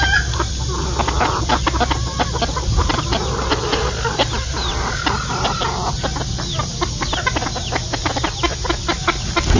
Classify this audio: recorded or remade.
recorded